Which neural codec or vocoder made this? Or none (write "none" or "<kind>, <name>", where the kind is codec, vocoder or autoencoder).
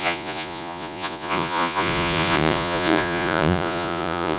vocoder, Vocos